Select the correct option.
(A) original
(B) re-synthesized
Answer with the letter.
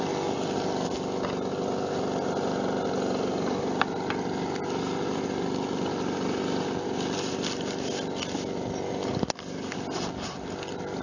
A